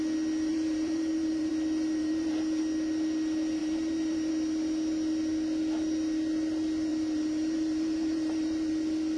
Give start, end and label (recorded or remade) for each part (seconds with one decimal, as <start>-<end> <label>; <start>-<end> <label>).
0.0-0.5 recorded; 0.5-1.5 remade; 1.5-2.0 recorded; 2.0-2.6 remade; 2.6-3.6 recorded; 3.6-4.3 remade; 4.3-6.9 recorded; 6.9-8.7 remade; 8.7-9.2 recorded